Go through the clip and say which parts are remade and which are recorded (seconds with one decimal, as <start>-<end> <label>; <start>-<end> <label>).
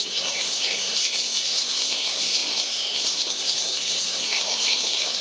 0.0-5.2 remade